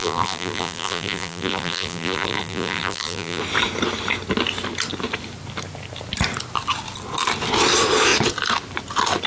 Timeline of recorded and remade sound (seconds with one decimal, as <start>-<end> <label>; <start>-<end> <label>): 0.0-3.4 remade; 3.4-9.3 recorded